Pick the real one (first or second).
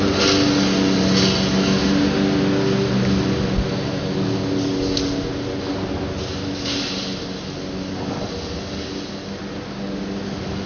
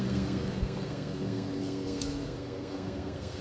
first